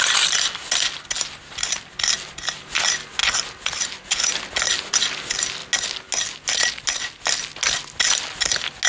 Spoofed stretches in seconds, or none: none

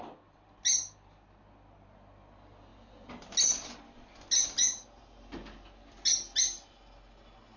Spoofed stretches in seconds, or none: none

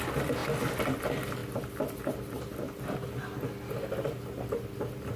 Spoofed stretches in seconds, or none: none

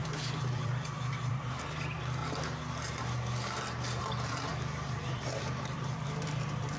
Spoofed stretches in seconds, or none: 0.0-2.2 (vocoder, BigVGAN v2); 4.0-6.8

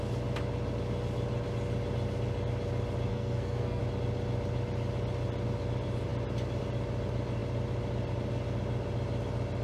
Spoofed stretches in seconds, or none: 3.1-3.8 (codec, SNAC)

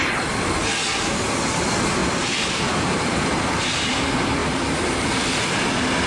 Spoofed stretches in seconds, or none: 2.0-4.0 (vocoder, BigVGAN v2); 4.4-5.1

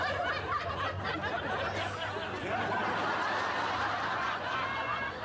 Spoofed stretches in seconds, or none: 4.1-5.2 (vocoder, Vocos)

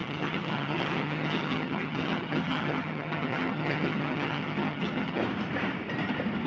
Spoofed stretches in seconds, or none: 0.0-5.2 (vocoder, HiFi-GAN)